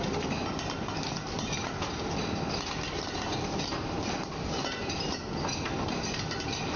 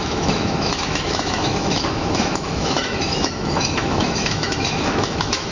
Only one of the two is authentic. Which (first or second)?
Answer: first